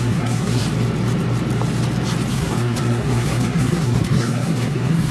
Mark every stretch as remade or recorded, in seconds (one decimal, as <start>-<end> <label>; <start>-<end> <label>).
0.0-0.6 remade; 0.6-2.3 recorded; 2.3-5.1 remade